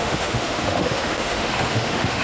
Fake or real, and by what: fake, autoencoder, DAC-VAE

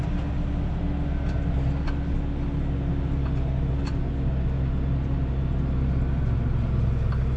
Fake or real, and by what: real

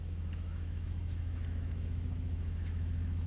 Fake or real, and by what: fake, autoencoder, DAC-VAE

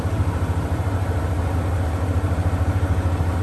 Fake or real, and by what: fake, vocoder, BigVGAN v2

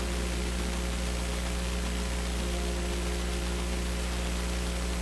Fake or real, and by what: real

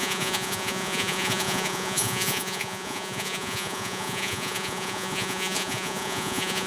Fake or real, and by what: fake, vocoder, Vocos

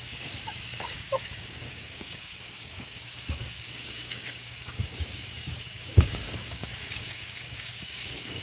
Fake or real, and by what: fake, codec, DAC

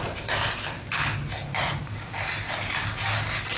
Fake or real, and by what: real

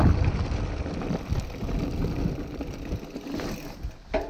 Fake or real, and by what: real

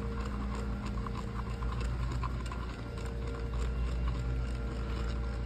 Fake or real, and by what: real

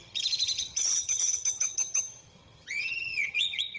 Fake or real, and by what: fake, vocoder, HiFi-GAN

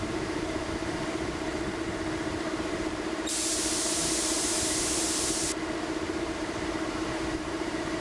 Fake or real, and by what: fake, vocoder, BigVGAN v2